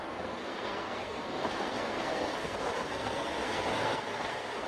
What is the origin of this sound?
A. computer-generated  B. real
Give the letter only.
A